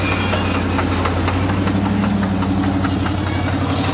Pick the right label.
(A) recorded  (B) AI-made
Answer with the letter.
A